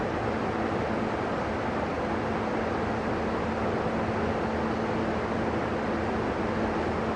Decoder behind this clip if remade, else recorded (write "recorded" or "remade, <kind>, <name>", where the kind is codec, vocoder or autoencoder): recorded